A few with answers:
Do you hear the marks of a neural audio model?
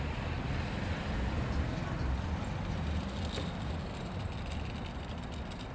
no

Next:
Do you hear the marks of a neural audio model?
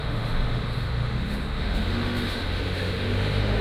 yes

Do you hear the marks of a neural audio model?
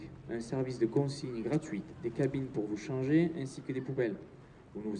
no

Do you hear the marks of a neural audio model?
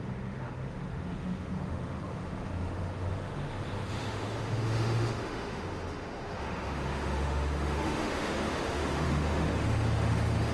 yes